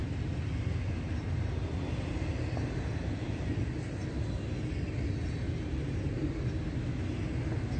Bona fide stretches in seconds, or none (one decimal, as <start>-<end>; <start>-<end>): 0.0-7.8